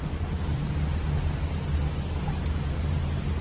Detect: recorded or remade recorded